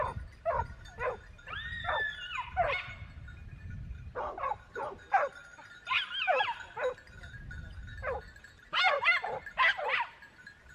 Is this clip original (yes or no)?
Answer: yes